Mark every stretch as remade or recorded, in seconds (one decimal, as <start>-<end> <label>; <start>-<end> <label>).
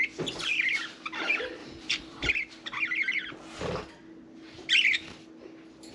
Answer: 0.0-1.6 recorded; 1.6-2.3 remade; 2.3-5.9 recorded